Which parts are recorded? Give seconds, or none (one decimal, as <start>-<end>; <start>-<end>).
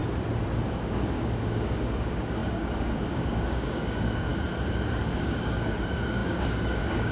0.0-0.7; 4.3-5.0